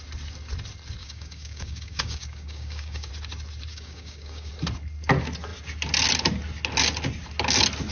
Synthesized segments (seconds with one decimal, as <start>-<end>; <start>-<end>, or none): 1.0-3.1; 3.7-4.5